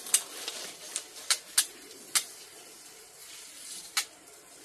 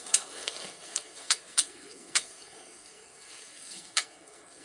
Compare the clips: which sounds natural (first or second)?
first